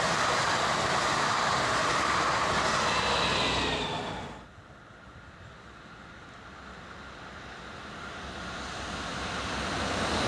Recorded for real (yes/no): yes